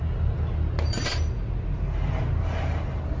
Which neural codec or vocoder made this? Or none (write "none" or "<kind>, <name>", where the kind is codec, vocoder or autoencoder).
none